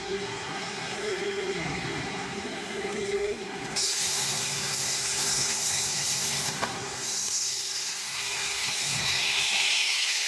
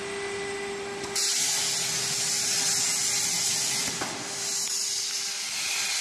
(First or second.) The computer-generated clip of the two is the first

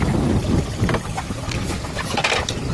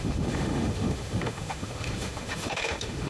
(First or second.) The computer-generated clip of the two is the second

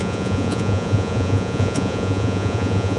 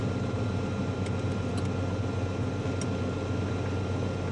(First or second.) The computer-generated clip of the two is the first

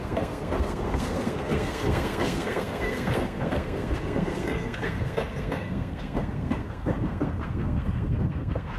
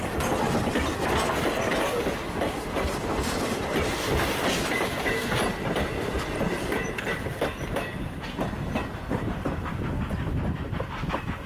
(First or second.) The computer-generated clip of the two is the first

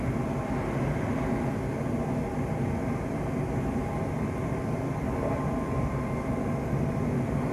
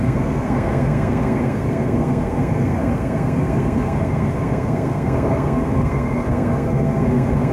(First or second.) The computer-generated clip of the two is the second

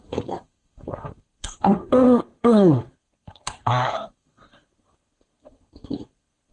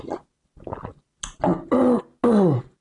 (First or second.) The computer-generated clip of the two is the first